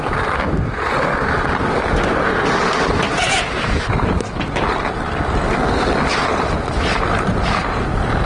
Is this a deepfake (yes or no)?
no